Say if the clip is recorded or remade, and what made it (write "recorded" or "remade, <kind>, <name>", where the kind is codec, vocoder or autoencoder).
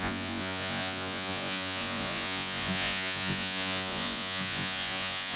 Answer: remade, vocoder, Vocos